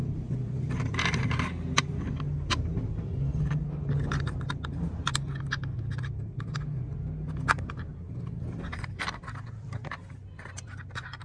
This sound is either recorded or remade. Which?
recorded